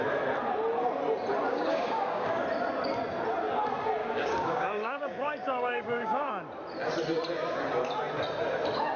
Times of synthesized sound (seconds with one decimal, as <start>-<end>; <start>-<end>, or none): 1.5-2.4; 4.0-6.3